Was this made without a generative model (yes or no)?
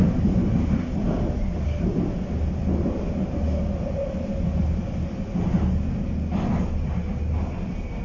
yes